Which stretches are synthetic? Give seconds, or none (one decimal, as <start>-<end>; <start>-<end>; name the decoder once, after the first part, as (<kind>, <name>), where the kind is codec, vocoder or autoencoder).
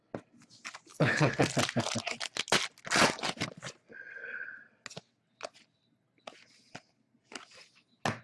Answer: 0.9-1.4 (codec, HILCodec)